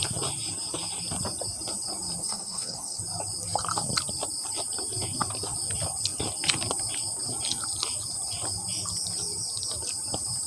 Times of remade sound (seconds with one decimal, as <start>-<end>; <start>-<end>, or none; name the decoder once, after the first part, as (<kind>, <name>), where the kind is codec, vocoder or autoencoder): 2.2-3.0 (codec, SNAC)